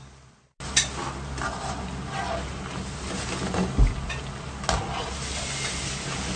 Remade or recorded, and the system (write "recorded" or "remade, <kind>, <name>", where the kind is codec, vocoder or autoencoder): recorded